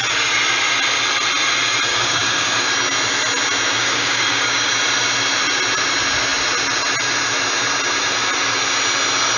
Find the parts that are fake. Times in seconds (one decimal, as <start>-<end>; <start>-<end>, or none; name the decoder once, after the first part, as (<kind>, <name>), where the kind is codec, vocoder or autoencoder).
1.9-2.7 (codec, DAC); 3.8-4.7